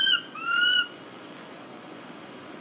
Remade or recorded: remade